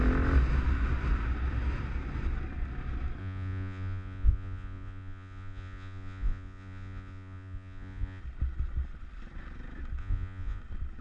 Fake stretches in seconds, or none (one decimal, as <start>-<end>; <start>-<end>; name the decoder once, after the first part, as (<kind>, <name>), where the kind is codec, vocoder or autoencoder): 3.2-8.2 (vocoder, Vocos); 10.0-10.6